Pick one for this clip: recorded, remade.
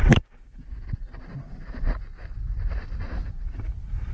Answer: recorded